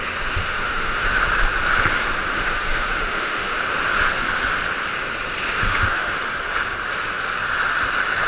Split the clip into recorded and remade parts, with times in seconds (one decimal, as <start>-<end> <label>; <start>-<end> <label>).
0.0-0.4 recorded; 0.4-1.2 remade; 1.2-2.3 recorded; 2.3-3.6 remade; 3.6-5.6 recorded; 5.6-6.2 remade; 6.2-8.3 recorded